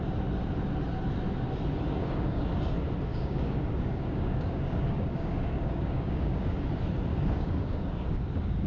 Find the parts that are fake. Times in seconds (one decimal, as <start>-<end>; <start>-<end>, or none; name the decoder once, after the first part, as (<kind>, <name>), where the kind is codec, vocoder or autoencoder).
2.0-2.5 (codec, DAC); 3.1-6.6; 7.1-8.7